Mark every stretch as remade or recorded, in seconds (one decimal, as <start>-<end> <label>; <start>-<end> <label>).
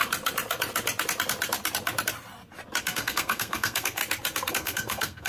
0.0-2.8 recorded; 2.8-4.0 remade; 4.0-4.5 recorded; 4.5-5.3 remade